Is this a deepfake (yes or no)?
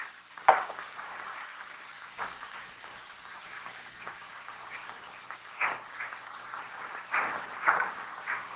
yes